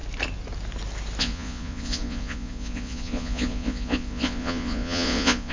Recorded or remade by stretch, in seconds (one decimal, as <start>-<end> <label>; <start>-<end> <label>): 0.0-1.2 recorded; 1.2-5.5 remade